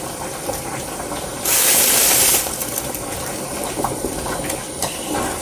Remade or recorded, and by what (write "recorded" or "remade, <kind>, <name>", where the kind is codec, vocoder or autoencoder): remade, vocoder, BigVGAN v2